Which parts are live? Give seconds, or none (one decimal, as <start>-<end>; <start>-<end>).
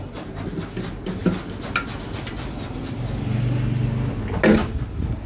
0.0-5.3